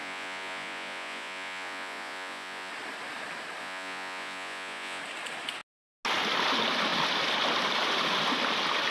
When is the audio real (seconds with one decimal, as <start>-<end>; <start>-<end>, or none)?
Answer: 2.7-3.6; 5.0-8.9